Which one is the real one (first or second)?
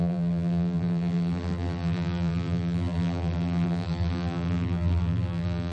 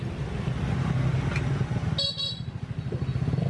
second